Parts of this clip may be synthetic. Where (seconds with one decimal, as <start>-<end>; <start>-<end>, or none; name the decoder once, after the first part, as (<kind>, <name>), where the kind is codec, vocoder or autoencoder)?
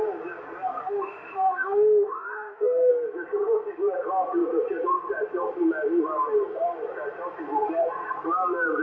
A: 0.8-2.9 (autoencoder, DAC-VAE)